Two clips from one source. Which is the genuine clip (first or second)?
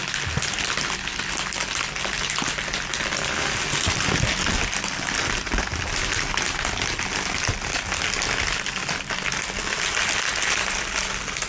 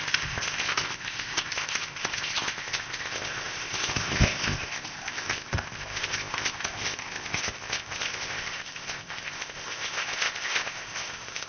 first